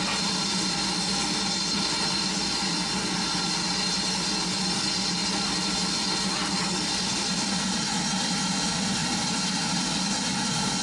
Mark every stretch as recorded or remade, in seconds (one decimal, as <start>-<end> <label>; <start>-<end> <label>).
0.0-9.0 recorded; 9.0-9.9 remade; 9.9-10.8 recorded